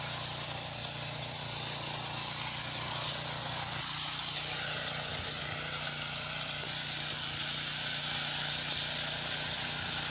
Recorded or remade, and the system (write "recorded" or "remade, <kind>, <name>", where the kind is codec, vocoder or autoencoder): recorded